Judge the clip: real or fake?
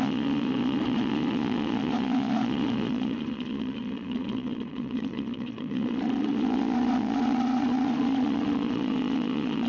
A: fake